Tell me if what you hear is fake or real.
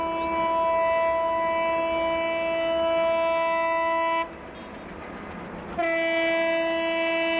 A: real